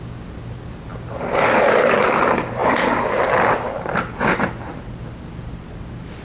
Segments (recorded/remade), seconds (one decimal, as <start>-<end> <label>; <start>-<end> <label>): 0.0-6.2 recorded